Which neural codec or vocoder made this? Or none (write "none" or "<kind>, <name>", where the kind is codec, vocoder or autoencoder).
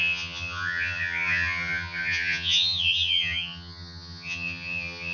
vocoder, HiFi-GAN